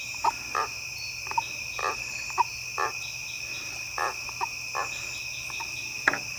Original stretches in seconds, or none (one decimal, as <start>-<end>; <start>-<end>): 0.0-1.8; 2.3-6.4